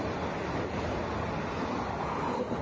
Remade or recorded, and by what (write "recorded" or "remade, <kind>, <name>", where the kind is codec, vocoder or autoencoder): recorded